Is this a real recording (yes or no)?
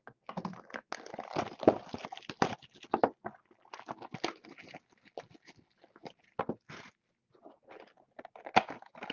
yes